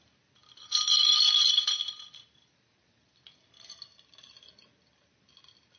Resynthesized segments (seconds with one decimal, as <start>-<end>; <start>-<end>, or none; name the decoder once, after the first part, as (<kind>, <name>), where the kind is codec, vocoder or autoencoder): 0.4-3.4 (vocoder, BigVGAN v2)